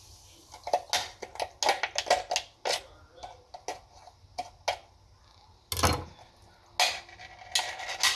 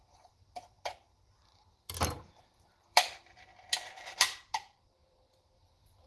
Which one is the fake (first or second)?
second